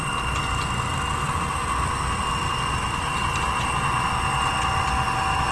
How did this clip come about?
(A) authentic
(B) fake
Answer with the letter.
A